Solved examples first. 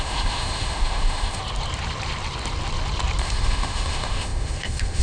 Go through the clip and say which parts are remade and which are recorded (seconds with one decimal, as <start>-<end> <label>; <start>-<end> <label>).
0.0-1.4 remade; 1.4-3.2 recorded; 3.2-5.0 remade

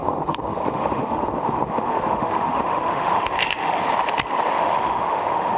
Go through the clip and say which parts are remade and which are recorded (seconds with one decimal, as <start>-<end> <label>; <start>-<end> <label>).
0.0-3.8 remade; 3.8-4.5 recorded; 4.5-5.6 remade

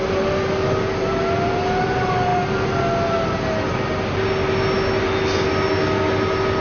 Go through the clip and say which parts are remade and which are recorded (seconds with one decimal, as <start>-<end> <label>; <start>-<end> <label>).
0.0-6.6 recorded